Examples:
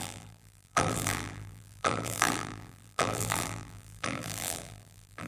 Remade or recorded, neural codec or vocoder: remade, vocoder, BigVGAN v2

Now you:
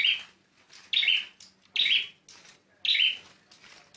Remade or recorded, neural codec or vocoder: recorded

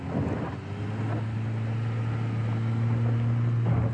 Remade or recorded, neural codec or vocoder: recorded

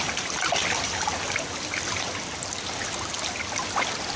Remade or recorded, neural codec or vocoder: recorded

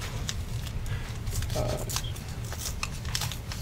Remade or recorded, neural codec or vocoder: recorded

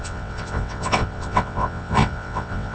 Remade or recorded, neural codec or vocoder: remade, vocoder, WaveNeXt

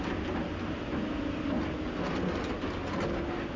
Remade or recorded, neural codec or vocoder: recorded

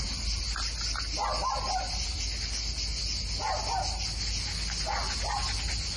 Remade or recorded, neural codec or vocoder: recorded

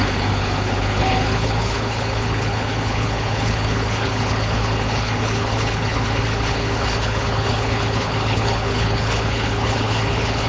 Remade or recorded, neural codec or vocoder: remade, codec, HILCodec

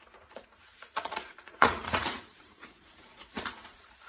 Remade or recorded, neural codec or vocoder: remade, vocoder, Vocos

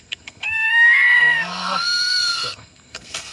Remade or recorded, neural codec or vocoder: remade, codec, SNAC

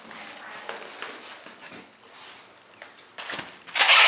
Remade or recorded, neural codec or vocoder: recorded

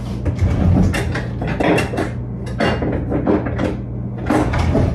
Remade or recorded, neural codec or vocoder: recorded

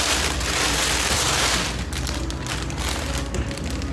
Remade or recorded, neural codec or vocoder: recorded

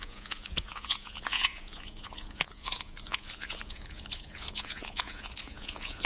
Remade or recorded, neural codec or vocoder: remade, vocoder, Vocos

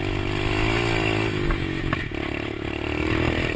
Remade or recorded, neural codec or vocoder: recorded